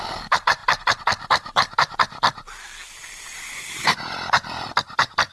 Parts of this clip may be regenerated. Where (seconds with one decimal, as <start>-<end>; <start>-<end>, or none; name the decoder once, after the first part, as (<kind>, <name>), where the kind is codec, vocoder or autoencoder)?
0.6-2.5 (vocoder, BigVGAN v2); 3.3-4.7